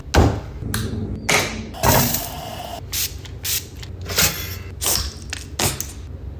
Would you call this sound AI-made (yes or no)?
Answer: no